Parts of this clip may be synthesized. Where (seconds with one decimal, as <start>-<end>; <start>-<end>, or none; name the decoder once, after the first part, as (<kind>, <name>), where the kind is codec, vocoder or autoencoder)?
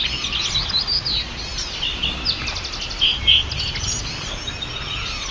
none